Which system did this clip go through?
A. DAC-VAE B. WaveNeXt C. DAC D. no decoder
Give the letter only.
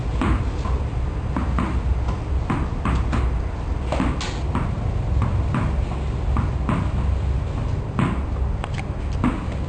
D